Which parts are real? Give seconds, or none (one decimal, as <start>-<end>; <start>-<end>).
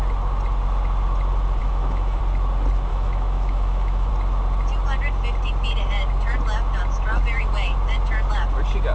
0.0-1.6; 2.2-2.9; 4.1-8.9